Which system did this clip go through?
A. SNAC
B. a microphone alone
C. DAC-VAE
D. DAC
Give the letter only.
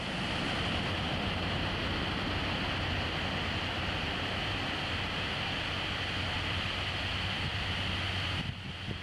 B